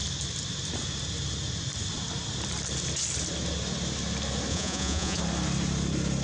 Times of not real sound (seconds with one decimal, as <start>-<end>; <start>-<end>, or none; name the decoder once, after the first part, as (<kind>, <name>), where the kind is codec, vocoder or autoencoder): 4.5-5.2 (vocoder, Vocos)

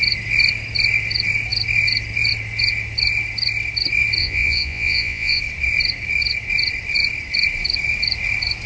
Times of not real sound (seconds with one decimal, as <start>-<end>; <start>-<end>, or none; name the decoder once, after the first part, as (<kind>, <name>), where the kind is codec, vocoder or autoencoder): 4.2-5.4 (vocoder, Vocos)

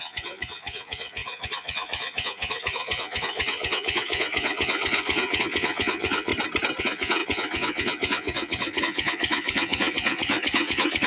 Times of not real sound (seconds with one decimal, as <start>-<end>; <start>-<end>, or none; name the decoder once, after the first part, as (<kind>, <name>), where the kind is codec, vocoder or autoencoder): 0.0-6.3 (vocoder, Vocos); 6.8-11.1

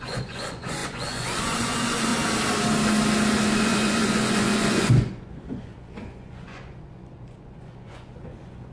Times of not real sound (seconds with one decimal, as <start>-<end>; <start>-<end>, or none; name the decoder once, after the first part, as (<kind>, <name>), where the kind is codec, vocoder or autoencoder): 0.0-2.1 (vocoder, Vocos); 3.6-8.7

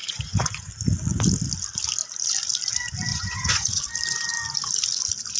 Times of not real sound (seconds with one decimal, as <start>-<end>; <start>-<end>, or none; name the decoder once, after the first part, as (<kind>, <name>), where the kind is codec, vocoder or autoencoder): 0.0-0.7 (vocoder, Vocos); 3.1-3.8